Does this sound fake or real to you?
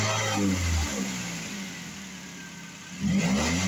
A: real